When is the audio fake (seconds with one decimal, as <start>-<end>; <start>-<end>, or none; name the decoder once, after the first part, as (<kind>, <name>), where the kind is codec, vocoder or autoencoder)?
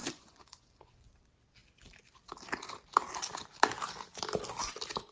0.0-1.1 (vocoder, Vocos)